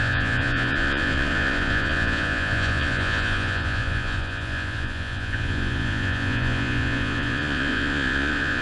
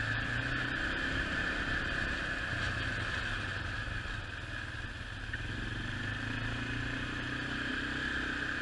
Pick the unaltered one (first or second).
second